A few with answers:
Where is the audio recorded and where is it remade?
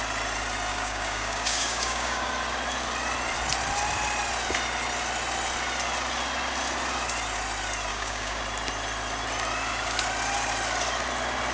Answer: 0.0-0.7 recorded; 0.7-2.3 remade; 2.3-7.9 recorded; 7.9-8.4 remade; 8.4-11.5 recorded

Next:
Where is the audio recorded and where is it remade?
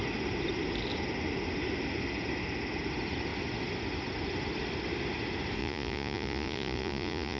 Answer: 0.0-5.6 recorded; 5.6-7.4 remade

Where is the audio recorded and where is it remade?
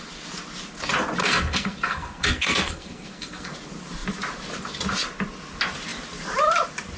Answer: 0.0-1.2 recorded; 1.2-3.5 remade; 3.5-7.0 recorded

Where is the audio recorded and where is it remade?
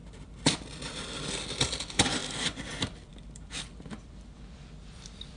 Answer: 0.0-1.1 remade; 1.1-2.2 recorded; 2.2-5.4 remade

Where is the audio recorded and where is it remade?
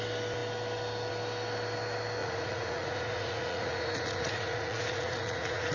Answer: 0.0-2.2 recorded; 2.2-5.7 remade